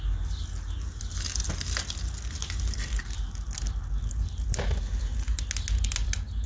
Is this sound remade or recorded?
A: recorded